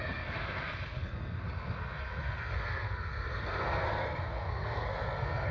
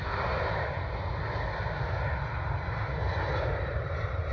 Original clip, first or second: second